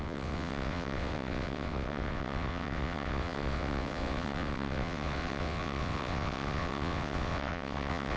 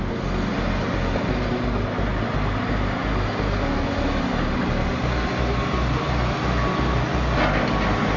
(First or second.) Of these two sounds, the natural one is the second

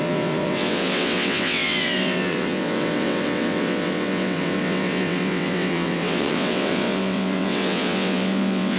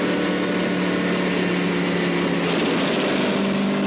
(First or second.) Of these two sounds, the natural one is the second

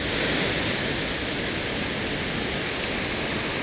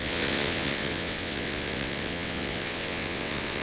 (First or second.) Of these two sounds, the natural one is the first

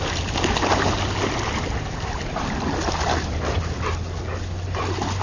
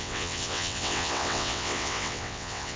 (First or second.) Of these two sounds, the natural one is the first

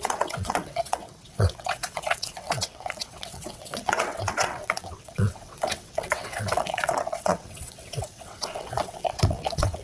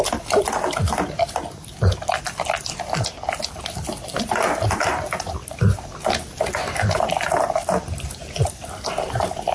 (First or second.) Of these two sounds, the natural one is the second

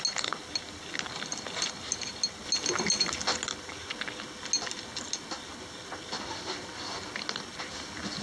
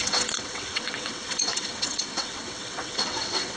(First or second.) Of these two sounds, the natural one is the first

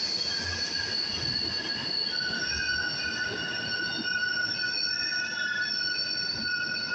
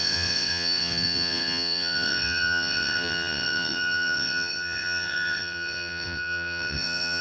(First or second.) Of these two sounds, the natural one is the first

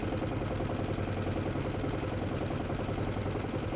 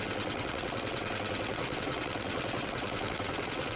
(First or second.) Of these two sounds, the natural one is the first